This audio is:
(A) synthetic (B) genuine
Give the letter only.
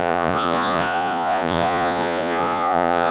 A